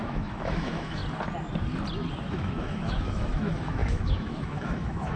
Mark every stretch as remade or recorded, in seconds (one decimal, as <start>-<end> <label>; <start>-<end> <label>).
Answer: 0.0-1.0 remade; 1.0-2.3 recorded; 2.3-5.2 remade